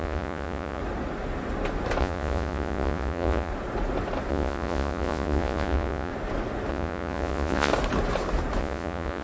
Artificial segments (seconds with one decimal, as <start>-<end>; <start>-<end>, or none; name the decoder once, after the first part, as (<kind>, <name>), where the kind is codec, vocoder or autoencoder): 0.0-0.8 (vocoder, Vocos); 2.0-3.5; 4.3-6.1; 6.7-7.7; 8.6-9.2